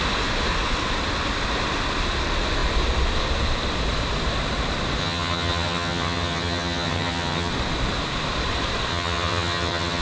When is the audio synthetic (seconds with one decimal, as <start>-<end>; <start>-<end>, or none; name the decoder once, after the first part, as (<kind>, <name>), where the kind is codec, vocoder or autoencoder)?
5.0-7.5 (vocoder, HiFi-GAN); 8.9-10.0